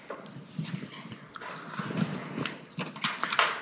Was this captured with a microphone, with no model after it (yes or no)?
yes